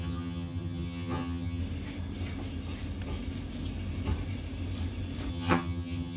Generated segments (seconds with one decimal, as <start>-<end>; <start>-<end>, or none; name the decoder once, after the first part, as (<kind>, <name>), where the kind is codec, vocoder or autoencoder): 0.0-1.6 (vocoder, HiFi-GAN); 5.3-6.2